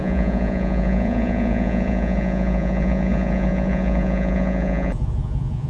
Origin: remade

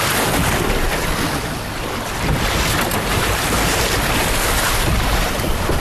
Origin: recorded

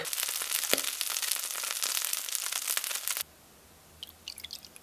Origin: recorded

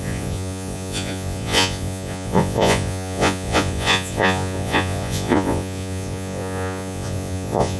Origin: remade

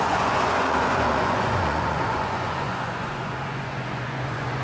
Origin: remade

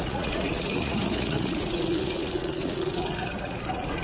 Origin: remade